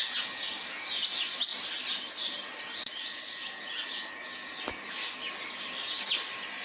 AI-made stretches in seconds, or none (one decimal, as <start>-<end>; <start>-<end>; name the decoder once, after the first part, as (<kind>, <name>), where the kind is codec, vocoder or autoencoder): none